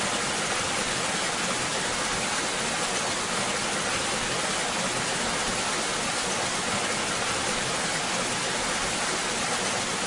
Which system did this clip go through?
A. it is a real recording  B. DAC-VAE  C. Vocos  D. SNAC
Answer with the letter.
A